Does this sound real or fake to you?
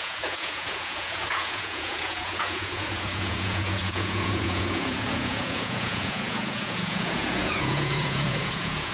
fake